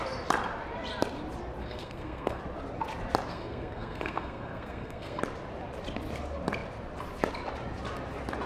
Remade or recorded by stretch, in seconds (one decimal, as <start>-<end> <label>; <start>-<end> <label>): 0.0-1.6 recorded; 1.6-2.4 remade; 2.4-3.3 recorded; 3.3-5.2 remade; 5.2-8.5 recorded